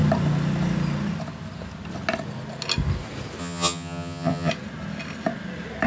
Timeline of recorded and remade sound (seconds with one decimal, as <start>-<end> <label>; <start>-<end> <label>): 0.0-3.4 recorded; 3.4-4.5 remade; 4.5-5.9 recorded